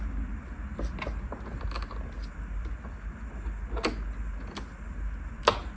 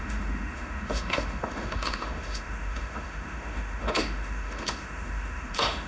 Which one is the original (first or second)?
first